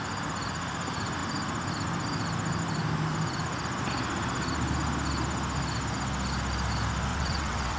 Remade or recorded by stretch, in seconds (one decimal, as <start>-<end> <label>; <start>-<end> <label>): 0.0-7.1 recorded; 7.1-7.8 remade